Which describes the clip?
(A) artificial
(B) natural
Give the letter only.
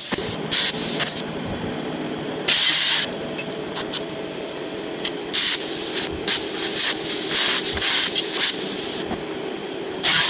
A